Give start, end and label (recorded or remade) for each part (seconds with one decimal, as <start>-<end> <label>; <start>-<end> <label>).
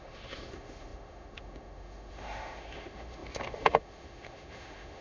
0.0-5.0 remade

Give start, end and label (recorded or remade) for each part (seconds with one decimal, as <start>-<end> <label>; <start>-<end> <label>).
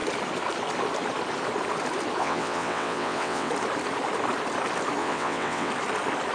0.0-2.2 recorded; 2.2-3.5 remade; 3.5-5.0 recorded; 5.0-5.7 remade; 5.7-6.3 recorded